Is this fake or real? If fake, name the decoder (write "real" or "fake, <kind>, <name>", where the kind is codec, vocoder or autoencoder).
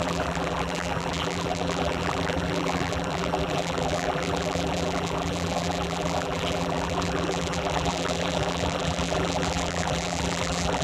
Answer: fake, vocoder, BigVGAN v2